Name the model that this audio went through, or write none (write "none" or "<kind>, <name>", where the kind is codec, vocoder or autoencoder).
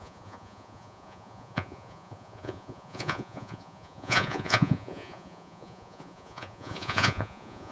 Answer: vocoder, Vocos